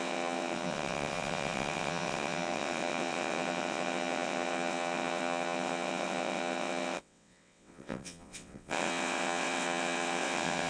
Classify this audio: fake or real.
fake